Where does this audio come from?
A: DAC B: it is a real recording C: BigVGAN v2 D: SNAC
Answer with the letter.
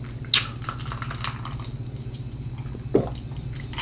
B